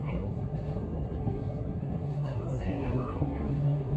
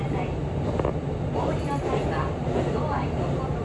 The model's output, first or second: first